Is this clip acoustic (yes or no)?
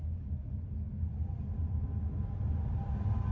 yes